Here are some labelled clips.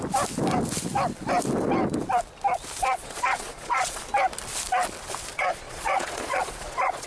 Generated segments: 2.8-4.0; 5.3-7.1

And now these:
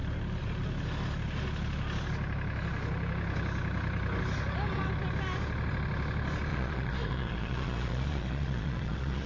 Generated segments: 6.5-9.3